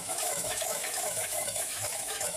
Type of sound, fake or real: fake